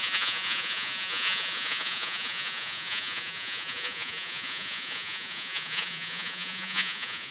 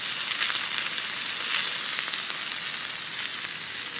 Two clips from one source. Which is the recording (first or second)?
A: second